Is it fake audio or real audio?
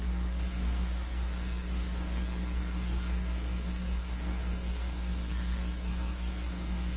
fake